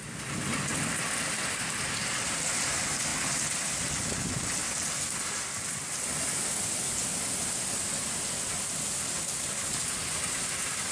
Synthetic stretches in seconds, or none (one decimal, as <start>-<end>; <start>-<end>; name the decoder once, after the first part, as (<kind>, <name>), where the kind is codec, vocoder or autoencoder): none